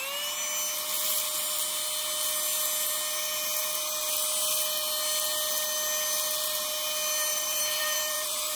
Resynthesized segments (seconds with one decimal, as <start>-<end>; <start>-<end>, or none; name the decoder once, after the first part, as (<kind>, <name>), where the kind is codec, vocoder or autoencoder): 7.3-8.5 (vocoder, BigVGAN v2)